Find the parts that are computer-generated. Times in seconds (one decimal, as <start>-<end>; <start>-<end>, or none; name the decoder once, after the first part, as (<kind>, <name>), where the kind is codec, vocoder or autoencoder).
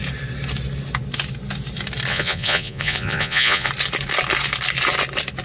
2.1-3.7 (vocoder, Vocos)